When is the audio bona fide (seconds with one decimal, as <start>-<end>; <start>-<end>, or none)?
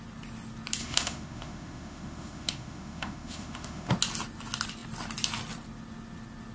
0.0-0.8; 3.9-6.5